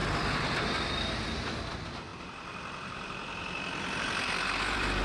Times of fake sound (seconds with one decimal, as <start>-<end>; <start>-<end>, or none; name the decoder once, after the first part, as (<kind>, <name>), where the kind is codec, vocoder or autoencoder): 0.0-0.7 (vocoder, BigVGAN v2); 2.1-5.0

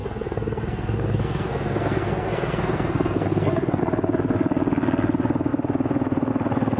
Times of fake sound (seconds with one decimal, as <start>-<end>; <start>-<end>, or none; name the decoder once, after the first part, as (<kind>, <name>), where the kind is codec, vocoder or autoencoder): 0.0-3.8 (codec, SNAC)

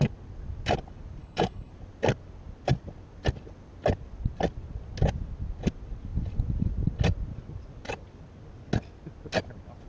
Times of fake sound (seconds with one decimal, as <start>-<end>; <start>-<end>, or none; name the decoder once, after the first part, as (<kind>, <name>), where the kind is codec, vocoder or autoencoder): 1.2-1.7 (codec, HILCodec)

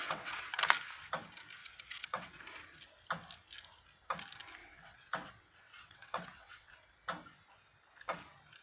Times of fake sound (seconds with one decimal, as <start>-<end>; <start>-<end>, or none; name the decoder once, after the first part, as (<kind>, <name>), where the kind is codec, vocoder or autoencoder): 0.0-0.6 (vocoder, WaveNeXt); 1.6-2.4; 4.6-6.7